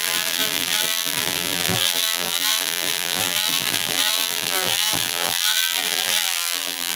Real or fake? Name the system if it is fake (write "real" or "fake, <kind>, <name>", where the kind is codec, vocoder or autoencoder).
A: fake, vocoder, BigVGAN v2